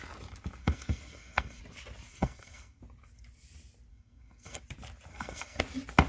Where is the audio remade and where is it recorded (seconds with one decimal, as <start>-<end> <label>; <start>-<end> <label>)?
0.0-0.6 recorded; 0.6-1.6 remade; 1.6-2.1 recorded; 2.1-2.8 remade; 2.8-3.9 recorded; 3.9-4.6 remade; 4.6-5.1 recorded; 5.1-5.6 remade; 5.6-6.1 recorded

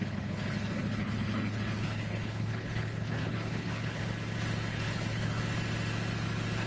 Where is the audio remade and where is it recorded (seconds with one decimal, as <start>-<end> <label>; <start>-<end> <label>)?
0.0-4.0 remade; 4.0-4.7 recorded; 4.7-5.4 remade; 5.4-6.7 recorded

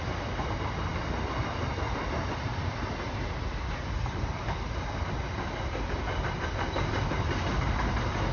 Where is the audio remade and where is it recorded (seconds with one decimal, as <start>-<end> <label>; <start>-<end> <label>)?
0.0-8.3 recorded

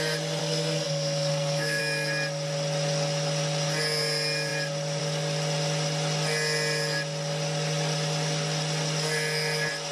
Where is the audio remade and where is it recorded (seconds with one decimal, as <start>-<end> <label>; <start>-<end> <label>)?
0.0-0.4 recorded; 0.4-1.8 remade; 1.8-9.9 recorded

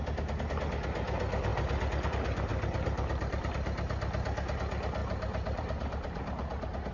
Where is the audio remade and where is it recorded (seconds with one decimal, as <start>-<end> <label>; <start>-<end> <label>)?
0.0-2.5 recorded; 2.5-3.5 remade; 3.5-5.0 recorded; 5.0-6.9 remade

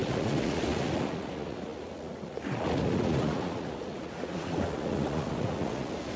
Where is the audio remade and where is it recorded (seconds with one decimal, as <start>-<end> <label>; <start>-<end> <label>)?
0.0-6.2 remade